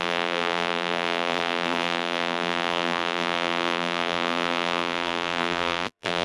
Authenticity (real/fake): fake